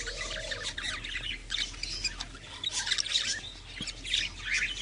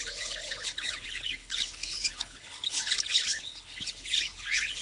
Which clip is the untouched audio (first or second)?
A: first